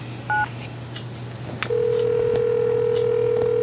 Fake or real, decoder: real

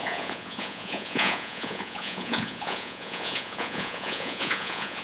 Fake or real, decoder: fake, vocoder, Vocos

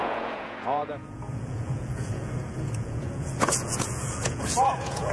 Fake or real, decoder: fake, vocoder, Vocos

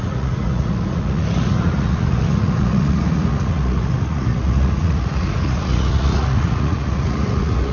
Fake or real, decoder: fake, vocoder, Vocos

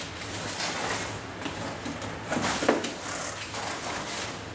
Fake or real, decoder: real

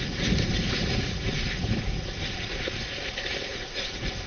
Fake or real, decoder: fake, vocoder, Vocos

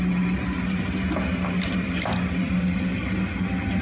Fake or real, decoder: real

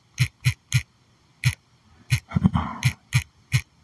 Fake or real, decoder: real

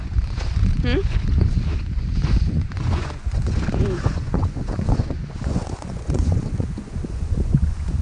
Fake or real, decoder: fake, vocoder, Vocos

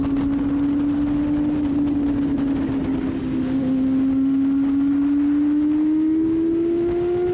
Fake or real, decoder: real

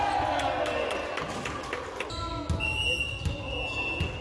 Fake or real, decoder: real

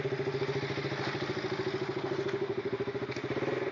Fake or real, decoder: real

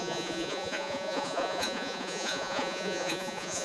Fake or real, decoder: fake, vocoder, Vocos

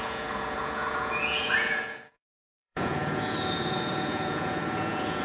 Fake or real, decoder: fake, vocoder, Vocos